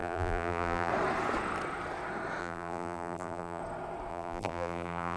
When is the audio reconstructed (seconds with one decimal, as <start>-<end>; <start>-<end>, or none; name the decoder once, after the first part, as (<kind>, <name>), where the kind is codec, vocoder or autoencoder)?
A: 0.0-0.9 (vocoder, BigVGAN v2); 2.4-3.6; 4.1-5.2